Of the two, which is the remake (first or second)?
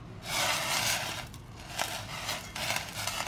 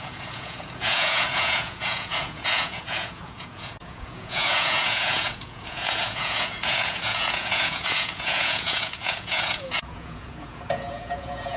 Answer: second